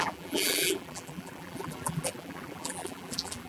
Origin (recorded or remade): remade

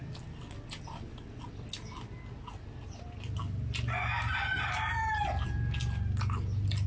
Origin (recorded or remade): recorded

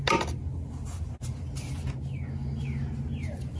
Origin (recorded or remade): recorded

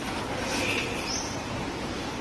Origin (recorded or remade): recorded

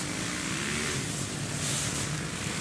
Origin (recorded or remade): recorded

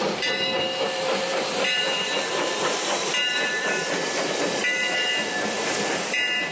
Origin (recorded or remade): remade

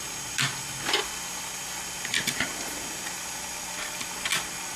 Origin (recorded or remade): recorded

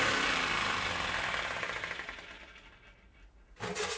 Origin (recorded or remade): recorded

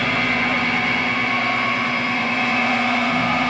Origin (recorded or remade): remade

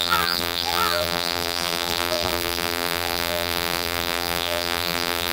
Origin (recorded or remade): remade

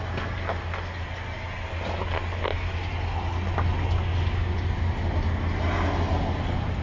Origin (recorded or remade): recorded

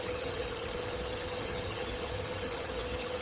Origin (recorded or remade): remade